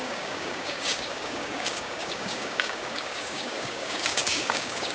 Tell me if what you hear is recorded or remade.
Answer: remade